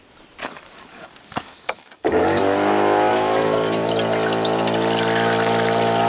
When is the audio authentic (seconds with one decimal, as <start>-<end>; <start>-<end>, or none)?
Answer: 0.0-0.4; 2.4-3.1; 3.9-6.1